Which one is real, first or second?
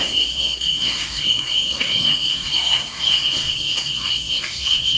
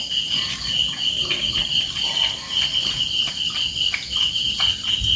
second